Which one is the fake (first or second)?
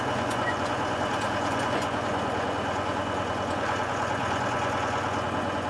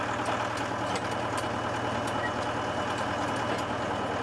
first